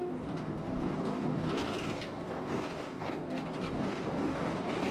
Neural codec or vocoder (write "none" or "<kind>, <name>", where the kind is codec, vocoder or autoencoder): codec, DAC